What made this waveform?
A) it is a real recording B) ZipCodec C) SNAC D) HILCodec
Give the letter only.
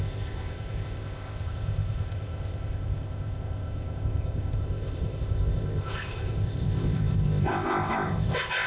B